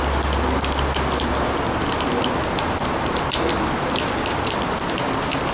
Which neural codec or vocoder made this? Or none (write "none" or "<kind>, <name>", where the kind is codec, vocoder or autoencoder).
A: none